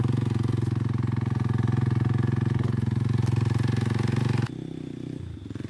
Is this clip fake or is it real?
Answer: real